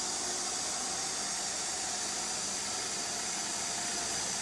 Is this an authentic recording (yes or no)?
yes